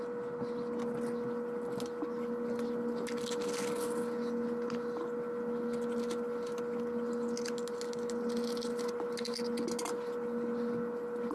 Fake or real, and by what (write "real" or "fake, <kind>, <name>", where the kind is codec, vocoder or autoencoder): real